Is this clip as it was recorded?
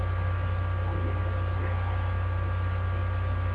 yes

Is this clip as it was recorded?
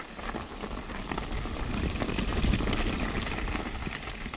yes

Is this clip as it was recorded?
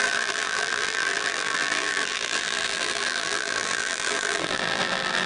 no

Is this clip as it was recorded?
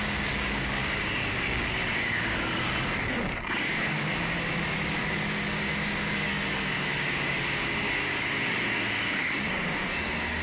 no